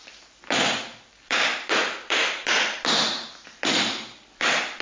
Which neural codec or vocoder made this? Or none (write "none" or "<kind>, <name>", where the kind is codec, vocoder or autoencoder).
vocoder, BigVGAN v2